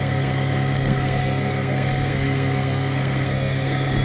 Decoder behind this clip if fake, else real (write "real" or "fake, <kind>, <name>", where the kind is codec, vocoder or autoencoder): fake, codec, SNAC